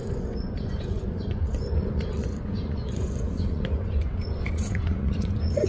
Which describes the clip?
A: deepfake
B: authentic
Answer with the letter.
A